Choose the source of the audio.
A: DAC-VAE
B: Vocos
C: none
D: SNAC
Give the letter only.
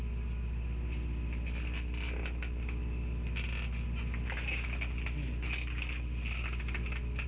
C